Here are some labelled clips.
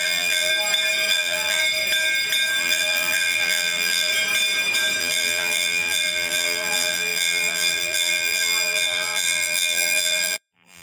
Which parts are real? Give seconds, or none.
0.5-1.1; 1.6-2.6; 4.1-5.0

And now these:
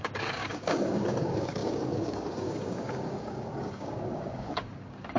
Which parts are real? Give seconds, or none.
none